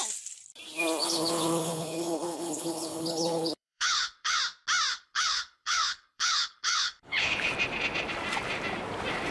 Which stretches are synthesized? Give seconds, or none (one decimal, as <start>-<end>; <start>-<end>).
1.0-4.4; 4.9-7.5